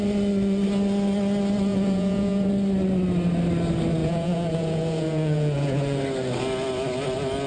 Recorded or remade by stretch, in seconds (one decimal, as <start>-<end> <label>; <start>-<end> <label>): 0.0-1.7 recorded; 1.7-2.5 remade; 2.5-4.0 recorded; 4.0-6.0 remade; 6.0-7.5 recorded